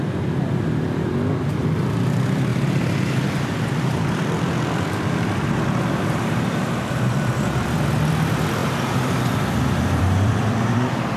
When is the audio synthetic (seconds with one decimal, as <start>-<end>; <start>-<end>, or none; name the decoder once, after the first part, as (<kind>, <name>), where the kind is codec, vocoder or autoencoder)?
0.5-11.2 (vocoder, BigVGAN v2)